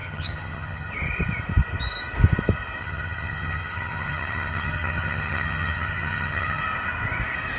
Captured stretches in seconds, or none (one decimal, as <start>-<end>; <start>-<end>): 0.9-2.8; 6.6-7.6